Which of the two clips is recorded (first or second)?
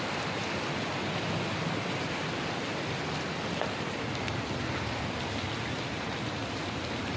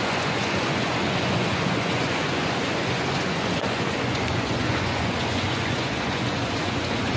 first